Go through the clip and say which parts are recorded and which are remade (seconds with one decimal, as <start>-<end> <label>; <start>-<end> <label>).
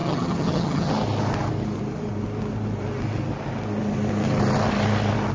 0.0-0.9 remade; 0.9-5.3 recorded